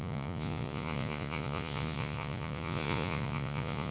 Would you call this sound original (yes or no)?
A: no